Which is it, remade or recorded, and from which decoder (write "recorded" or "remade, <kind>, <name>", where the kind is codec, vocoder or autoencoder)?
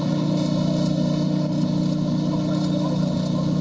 recorded